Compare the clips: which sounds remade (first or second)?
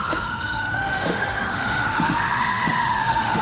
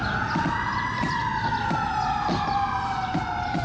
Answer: first